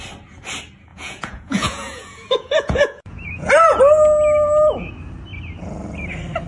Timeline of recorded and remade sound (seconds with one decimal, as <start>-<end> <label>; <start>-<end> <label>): 0.0-0.9 recorded; 0.9-3.8 remade; 3.8-6.5 recorded